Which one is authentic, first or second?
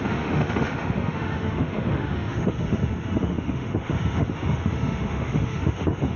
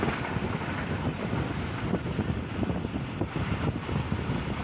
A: second